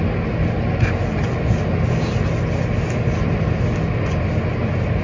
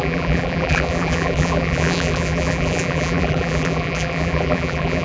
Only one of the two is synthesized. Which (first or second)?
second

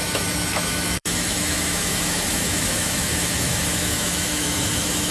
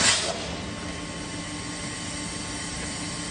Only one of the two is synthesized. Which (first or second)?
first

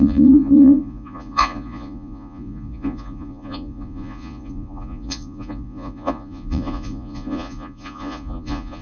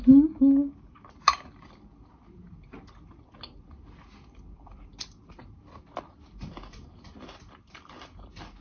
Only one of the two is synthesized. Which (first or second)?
first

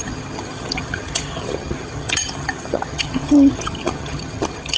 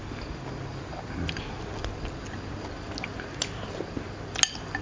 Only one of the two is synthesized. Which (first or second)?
first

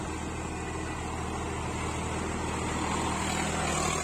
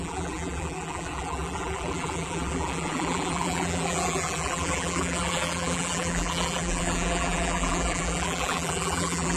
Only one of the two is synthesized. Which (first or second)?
second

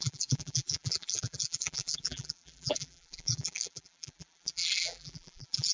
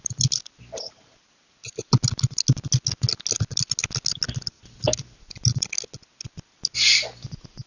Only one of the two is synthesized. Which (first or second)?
first